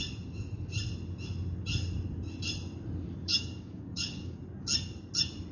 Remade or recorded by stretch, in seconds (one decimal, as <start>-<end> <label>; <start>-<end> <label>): 0.0-3.2 recorded; 3.2-4.4 remade; 4.4-5.5 recorded